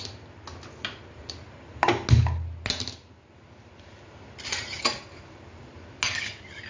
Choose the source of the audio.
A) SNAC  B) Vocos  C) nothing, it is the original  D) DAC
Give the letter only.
C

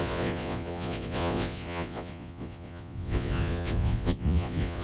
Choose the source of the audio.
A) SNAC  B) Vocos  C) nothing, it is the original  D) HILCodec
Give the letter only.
B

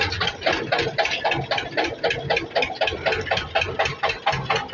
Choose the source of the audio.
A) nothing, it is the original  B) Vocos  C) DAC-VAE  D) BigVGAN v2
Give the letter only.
A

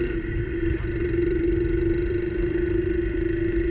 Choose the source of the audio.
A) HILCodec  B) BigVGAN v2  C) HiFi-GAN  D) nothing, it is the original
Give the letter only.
B